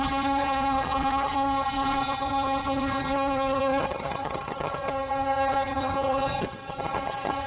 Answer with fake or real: fake